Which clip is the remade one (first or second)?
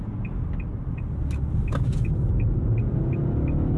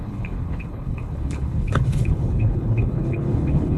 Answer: second